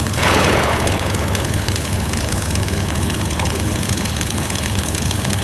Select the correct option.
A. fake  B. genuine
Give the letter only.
A